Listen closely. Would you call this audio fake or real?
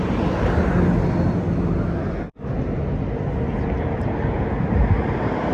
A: real